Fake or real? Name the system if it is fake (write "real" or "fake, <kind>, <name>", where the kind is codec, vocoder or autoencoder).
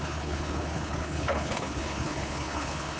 fake, codec, HILCodec